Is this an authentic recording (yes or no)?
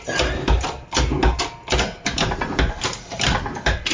yes